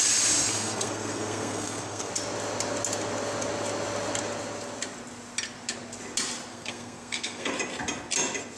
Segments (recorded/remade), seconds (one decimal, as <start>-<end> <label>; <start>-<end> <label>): 0.0-0.4 recorded; 0.4-2.1 remade; 2.1-6.5 recorded; 6.5-7.5 remade; 7.5-8.6 recorded